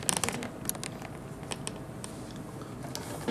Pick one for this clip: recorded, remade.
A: recorded